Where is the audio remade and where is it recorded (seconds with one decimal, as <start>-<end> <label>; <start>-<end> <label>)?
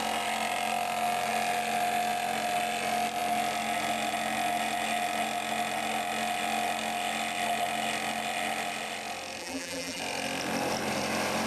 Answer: 0.0-9.4 recorded; 9.4-10.0 remade; 10.0-11.5 recorded